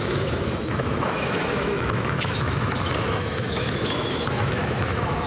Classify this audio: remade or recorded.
remade